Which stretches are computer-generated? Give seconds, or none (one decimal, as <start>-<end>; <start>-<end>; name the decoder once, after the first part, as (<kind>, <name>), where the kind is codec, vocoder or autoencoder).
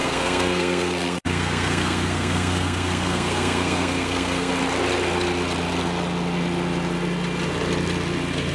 0.0-4.5 (codec, SNAC)